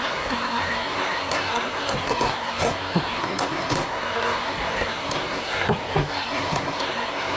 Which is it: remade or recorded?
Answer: remade